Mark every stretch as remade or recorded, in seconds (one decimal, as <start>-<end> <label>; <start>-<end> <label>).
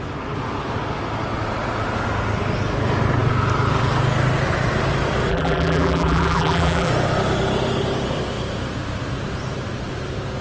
0.0-5.3 recorded; 5.3-6.9 remade; 6.9-10.4 recorded